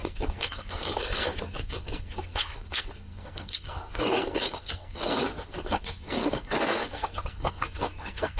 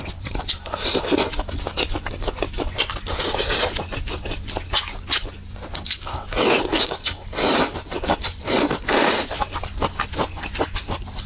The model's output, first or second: first